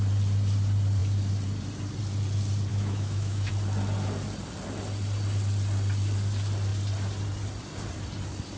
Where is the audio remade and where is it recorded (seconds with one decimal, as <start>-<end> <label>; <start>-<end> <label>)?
0.0-2.7 recorded; 2.7-3.5 remade; 3.5-8.6 recorded